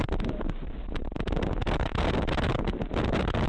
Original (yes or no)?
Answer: yes